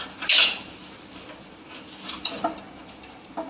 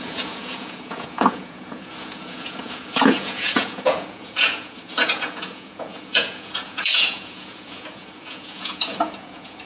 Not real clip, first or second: second